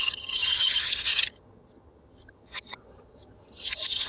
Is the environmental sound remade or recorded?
remade